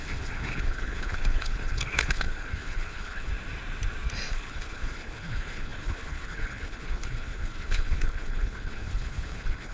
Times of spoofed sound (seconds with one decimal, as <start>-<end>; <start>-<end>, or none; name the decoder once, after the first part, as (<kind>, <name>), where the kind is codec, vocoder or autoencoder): 0.0-3.3 (codec, HILCodec); 4.3-9.7